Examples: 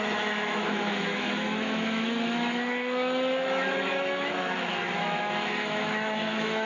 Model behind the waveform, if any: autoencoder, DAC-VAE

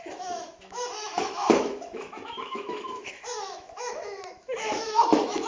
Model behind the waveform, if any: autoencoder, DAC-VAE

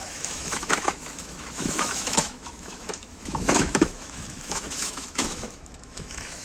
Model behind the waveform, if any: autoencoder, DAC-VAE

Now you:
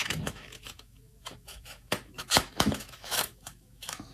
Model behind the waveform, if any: autoencoder, DAC-VAE